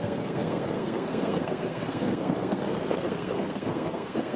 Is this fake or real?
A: fake